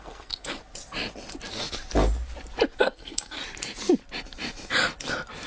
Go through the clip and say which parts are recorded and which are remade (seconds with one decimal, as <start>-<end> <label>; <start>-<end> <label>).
0.0-0.6 remade; 0.6-2.8 recorded; 2.8-3.4 remade; 3.4-5.5 recorded